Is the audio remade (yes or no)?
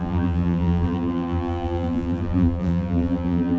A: yes